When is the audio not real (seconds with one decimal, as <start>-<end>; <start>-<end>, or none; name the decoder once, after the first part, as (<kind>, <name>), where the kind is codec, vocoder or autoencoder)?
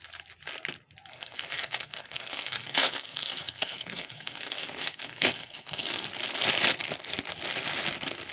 1.1-6.1 (codec, SNAC)